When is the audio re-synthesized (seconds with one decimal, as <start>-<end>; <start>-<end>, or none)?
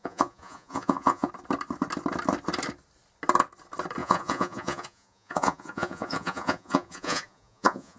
0.0-1.3; 4.0-8.0